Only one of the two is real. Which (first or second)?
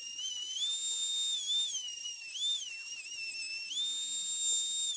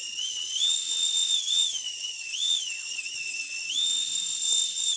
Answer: first